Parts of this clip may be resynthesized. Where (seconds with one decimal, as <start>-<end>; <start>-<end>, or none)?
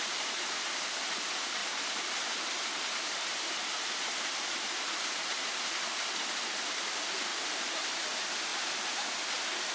7.3-7.9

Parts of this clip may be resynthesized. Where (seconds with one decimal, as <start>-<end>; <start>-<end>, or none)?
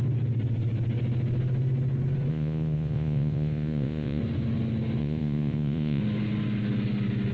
2.3-4.2; 5.0-6.0